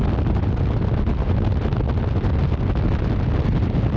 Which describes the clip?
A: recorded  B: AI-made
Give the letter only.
A